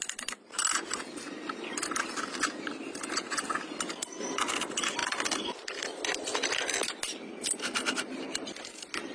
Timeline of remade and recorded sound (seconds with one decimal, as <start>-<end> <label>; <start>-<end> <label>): 0.0-9.1 recorded